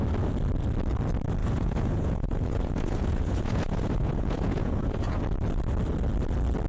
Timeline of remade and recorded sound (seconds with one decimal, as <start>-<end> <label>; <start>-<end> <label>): 0.0-1.4 recorded; 1.4-5.2 remade; 5.2-6.7 recorded